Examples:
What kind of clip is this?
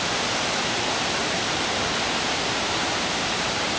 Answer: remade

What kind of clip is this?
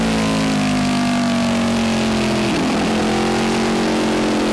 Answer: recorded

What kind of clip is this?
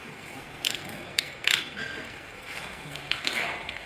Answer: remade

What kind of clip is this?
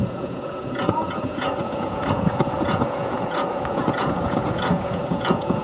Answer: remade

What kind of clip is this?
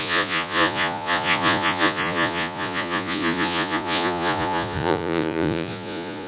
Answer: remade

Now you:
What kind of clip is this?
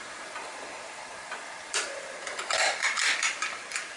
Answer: remade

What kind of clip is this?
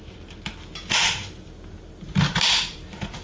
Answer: recorded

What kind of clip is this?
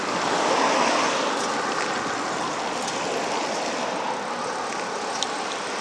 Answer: recorded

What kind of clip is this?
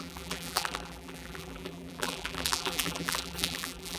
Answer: remade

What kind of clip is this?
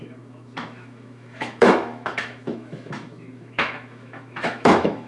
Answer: remade